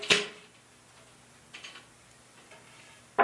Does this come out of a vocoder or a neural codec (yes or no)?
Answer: no